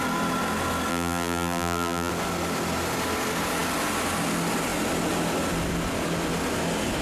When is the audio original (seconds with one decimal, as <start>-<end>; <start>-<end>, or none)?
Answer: 0.0-0.9; 2.1-7.0